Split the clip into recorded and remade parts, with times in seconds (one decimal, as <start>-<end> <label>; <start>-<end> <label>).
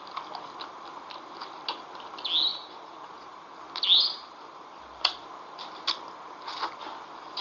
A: 0.0-2.5 recorded; 2.5-3.6 remade; 3.6-7.4 recorded